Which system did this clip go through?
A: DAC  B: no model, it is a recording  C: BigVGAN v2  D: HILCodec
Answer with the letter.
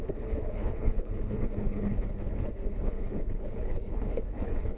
D